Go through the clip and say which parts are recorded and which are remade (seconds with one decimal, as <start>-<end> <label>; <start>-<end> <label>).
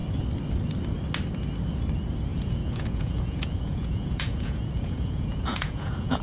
0.0-2.3 recorded; 2.3-6.2 remade